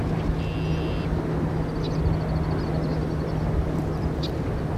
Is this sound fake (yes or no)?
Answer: no